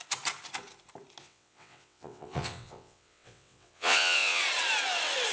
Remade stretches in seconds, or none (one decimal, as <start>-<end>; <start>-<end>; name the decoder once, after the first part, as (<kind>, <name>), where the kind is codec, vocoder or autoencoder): 1.2-4.4 (vocoder, WaveNeXt)